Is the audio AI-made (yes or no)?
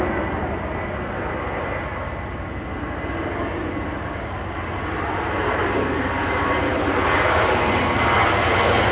no